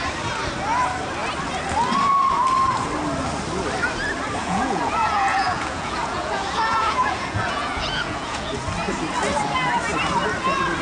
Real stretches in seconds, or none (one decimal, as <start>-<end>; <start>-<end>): 0.0-4.4; 8.5-10.8